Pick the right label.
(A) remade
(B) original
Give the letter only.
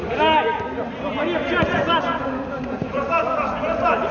B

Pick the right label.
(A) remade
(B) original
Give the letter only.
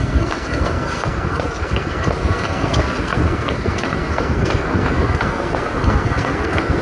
A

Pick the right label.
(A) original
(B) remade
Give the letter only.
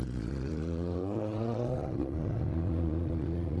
B